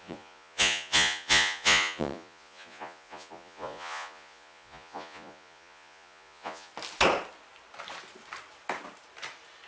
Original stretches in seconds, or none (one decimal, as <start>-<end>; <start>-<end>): 6.7-9.7